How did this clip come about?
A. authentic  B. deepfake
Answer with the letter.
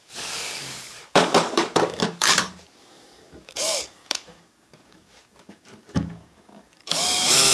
B